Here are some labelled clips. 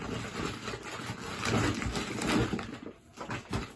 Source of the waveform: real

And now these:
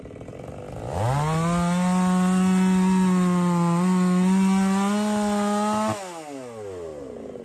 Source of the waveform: real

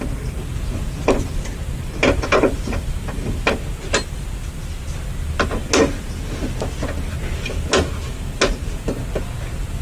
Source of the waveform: real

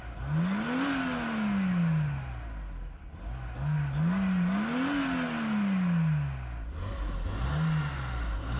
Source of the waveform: real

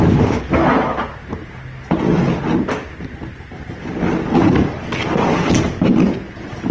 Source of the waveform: real